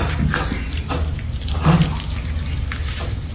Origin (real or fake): real